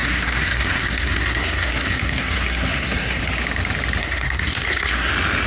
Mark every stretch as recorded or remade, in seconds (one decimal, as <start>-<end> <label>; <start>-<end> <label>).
0.0-3.2 remade; 3.2-4.0 recorded; 4.0-5.1 remade; 5.1-5.5 recorded